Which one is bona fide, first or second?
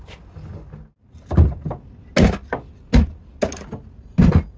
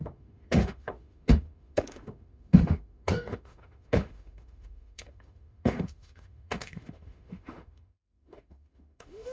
first